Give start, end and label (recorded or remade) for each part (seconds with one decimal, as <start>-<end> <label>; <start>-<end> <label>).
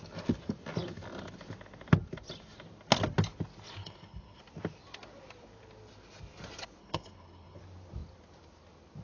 0.0-3.8 recorded; 3.8-4.4 remade; 4.4-6.8 recorded; 6.8-7.6 remade; 7.6-9.0 recorded